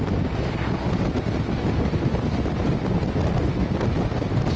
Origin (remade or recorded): recorded